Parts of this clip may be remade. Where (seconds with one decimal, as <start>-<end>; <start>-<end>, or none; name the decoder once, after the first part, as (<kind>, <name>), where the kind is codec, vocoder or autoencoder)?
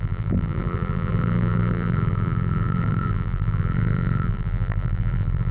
0.0-5.5 (vocoder, BigVGAN v2)